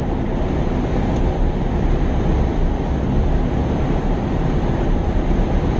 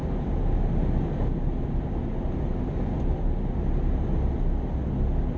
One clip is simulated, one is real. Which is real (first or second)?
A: second